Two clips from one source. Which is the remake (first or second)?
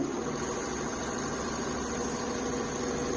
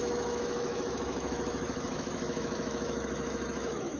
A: second